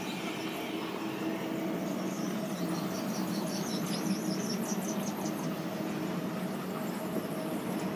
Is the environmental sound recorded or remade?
recorded